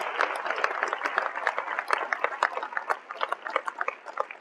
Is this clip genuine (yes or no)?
yes